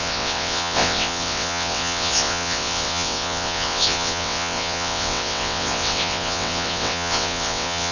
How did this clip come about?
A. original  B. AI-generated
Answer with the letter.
B